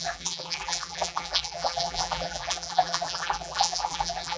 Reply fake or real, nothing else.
fake